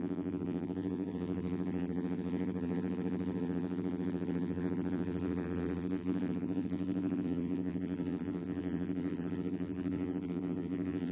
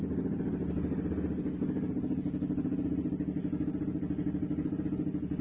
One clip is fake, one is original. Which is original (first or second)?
second